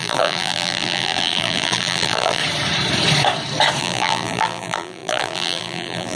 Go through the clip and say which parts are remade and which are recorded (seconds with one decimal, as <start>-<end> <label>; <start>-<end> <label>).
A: 0.0-2.4 remade; 2.4-3.8 recorded; 3.8-6.2 remade